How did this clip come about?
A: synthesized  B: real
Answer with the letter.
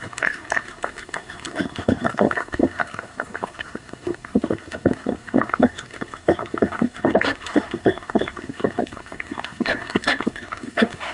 A